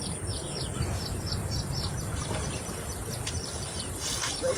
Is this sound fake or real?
fake